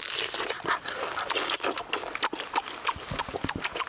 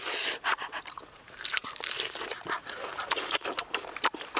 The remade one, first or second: second